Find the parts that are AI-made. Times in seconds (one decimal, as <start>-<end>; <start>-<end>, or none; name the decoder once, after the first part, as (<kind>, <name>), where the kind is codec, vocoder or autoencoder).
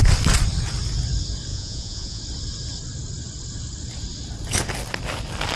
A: 1.5-2.2 (vocoder, Vocos)